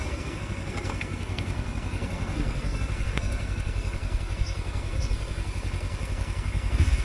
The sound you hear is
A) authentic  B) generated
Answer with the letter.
B